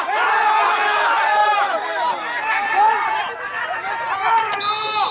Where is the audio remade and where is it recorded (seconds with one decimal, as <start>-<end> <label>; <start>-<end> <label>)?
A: 0.0-1.4 recorded; 1.4-4.5 remade; 4.5-5.1 recorded